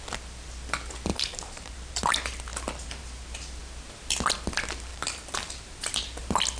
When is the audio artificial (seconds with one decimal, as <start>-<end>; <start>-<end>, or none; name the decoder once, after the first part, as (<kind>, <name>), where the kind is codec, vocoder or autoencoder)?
1.1-2.0 (vocoder, BigVGAN v2); 4.9-5.8